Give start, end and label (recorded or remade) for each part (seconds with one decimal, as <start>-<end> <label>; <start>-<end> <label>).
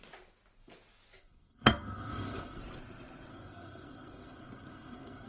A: 0.0-1.2 recorded; 1.2-2.6 remade; 2.6-3.3 recorded; 3.3-5.3 remade